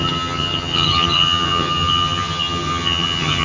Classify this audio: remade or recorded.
remade